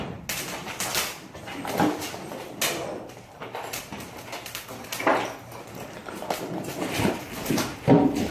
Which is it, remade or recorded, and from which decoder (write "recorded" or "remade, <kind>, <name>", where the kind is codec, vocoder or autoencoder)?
recorded